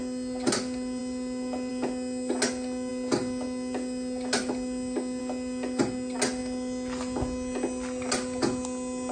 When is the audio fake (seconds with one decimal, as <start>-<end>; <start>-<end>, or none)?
none